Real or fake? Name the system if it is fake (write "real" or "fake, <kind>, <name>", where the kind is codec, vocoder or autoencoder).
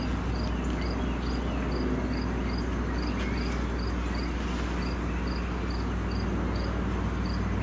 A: real